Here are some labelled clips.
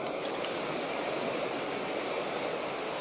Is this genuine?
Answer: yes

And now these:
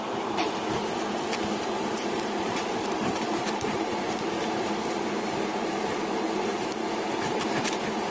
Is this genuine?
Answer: no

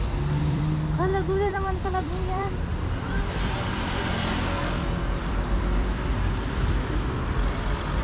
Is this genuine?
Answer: no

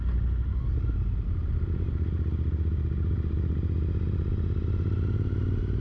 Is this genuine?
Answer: yes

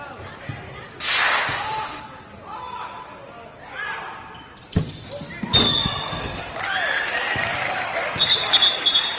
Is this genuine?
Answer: yes